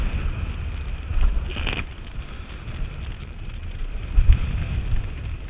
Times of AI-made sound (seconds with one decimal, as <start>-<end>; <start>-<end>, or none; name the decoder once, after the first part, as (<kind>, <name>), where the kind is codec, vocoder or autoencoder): 3.2-4.0 (vocoder, Vocos)